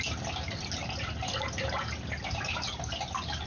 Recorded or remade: recorded